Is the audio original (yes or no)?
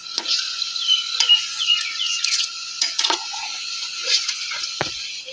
no